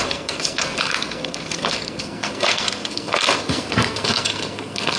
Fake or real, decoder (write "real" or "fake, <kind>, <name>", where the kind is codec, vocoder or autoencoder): fake, codec, SNAC